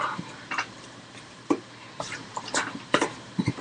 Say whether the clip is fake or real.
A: fake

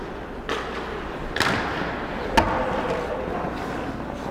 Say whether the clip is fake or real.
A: real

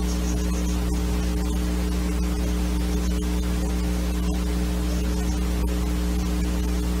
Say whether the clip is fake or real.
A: real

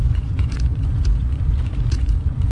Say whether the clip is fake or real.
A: fake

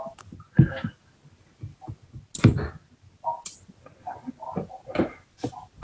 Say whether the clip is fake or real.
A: real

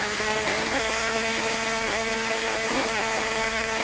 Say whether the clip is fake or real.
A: fake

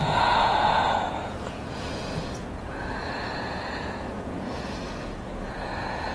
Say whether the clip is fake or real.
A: fake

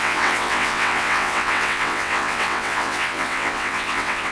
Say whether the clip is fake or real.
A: fake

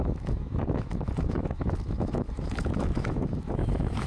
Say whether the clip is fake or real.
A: fake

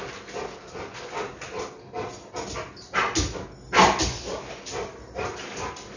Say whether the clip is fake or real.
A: real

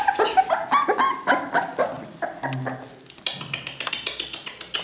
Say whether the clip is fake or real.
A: real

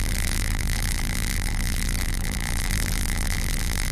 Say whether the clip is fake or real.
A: fake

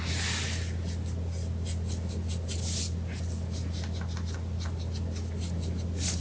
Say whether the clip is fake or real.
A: real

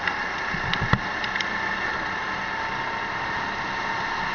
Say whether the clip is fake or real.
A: real